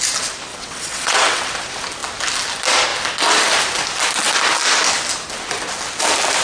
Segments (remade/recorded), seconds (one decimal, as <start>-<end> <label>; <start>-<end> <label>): 0.0-0.5 recorded; 0.5-1.5 remade; 1.5-6.4 recorded